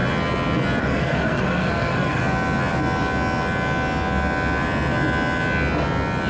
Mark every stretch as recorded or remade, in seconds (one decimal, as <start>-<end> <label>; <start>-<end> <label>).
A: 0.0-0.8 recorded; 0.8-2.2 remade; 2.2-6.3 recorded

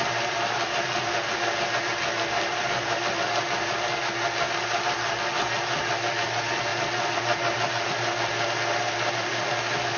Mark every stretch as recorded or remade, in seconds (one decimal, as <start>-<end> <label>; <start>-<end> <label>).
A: 0.0-10.0 recorded

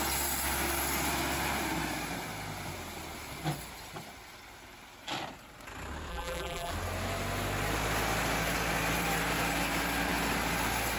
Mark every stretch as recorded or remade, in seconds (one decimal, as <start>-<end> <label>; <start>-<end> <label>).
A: 0.0-6.1 recorded; 6.1-6.7 remade; 6.7-11.0 recorded

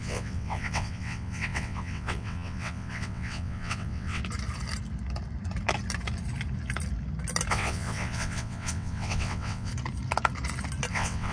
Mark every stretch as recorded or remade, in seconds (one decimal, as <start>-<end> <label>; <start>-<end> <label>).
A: 0.0-4.2 remade; 4.2-7.5 recorded; 7.5-9.7 remade; 9.7-10.9 recorded; 10.9-11.3 remade